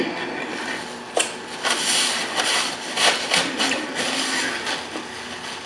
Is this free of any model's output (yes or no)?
yes